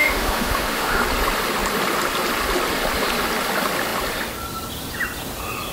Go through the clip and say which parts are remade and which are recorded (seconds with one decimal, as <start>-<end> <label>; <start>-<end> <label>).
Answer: 0.0-1.0 remade; 1.0-5.7 recorded